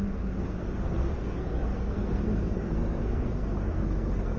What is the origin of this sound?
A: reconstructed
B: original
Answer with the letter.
A